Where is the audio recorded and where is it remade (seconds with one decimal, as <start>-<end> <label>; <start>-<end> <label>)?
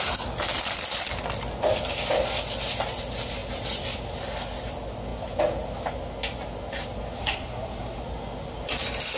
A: 0.0-7.2 recorded; 7.2-8.0 remade; 8.0-9.2 recorded